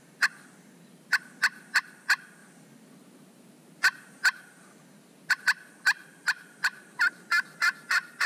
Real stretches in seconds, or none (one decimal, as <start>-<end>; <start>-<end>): 0.0-6.1